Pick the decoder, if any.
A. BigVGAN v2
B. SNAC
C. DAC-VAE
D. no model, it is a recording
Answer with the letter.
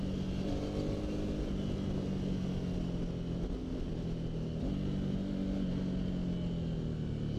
D